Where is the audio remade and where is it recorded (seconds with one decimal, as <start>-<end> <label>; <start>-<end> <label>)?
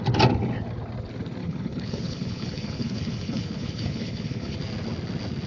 0.0-1.4 recorded; 1.4-4.6 remade; 4.6-5.5 recorded